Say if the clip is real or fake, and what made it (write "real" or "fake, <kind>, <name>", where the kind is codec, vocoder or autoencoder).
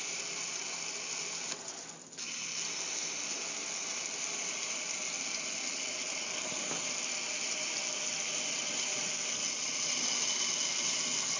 real